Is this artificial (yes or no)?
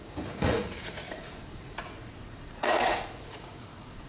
yes